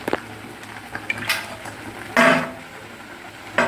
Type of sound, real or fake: real